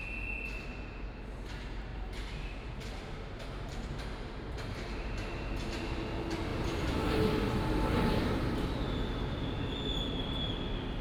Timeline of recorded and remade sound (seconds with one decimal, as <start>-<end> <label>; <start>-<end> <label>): 0.0-1.9 recorded; 1.9-5.3 remade; 5.3-6.5 recorded; 6.5-7.0 remade; 7.0-11.0 recorded

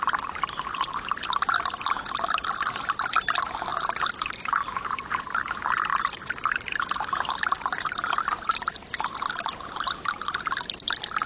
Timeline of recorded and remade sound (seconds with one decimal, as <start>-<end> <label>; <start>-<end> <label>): 0.0-3.7 recorded; 3.7-5.2 remade; 5.2-5.9 recorded; 5.9-8.0 remade; 8.0-11.3 recorded

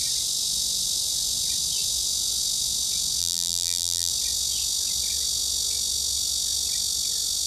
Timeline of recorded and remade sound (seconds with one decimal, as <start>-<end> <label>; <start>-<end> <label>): 0.0-3.2 recorded; 3.2-4.1 remade; 4.1-7.5 recorded

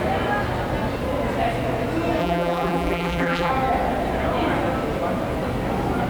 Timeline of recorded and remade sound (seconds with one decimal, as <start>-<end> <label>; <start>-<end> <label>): 0.0-2.2 recorded; 2.2-3.5 remade; 3.5-6.1 recorded